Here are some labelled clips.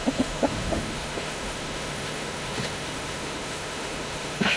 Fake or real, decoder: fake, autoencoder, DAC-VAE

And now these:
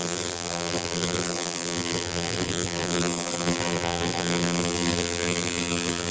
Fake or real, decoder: fake, vocoder, BigVGAN v2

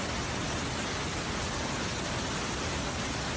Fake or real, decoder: real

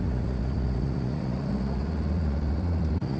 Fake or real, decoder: fake, vocoder, Vocos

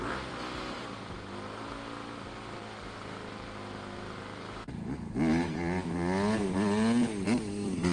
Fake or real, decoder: real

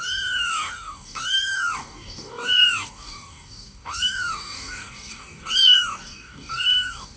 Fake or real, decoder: fake, codec, DAC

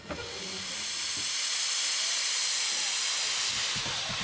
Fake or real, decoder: real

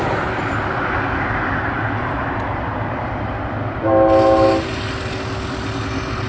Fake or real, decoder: real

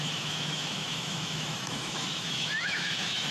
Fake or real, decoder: fake, autoencoder, DAC-VAE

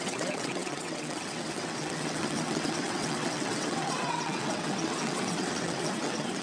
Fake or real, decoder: fake, vocoder, WaveNeXt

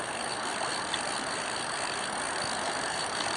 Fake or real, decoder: real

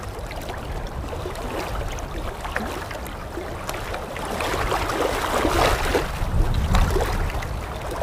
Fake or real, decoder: real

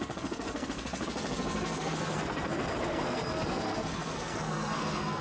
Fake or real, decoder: fake, codec, SNAC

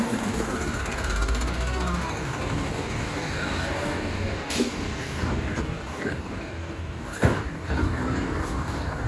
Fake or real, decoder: fake, codec, DAC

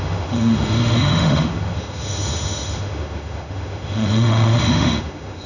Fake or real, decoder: fake, autoencoder, DAC-VAE